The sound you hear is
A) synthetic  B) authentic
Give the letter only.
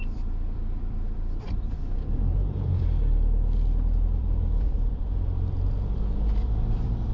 A